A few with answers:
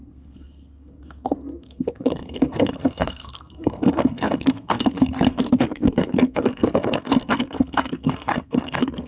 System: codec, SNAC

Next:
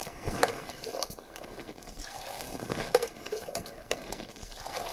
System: codec, SNAC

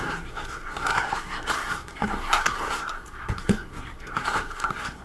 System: codec, SNAC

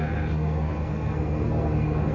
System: codec, SNAC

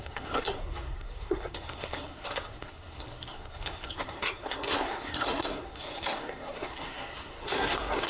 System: codec, SNAC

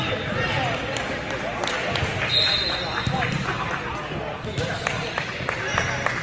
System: none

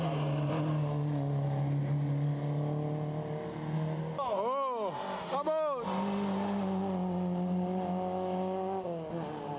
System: none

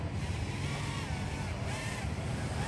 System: none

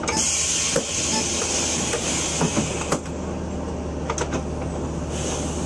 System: none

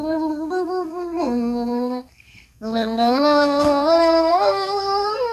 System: codec, SNAC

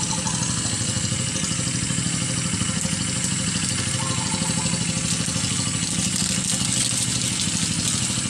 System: none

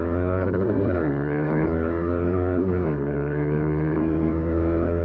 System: codec, SNAC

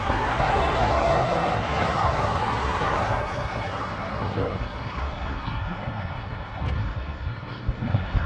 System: codec, SNAC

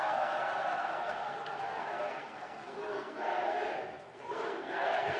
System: codec, SNAC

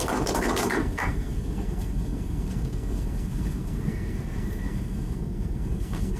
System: codec, SNAC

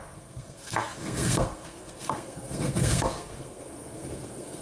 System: codec, SNAC